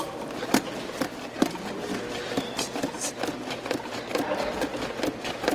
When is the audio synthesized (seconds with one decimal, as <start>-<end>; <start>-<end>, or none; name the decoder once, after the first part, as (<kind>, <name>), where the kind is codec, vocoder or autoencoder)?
none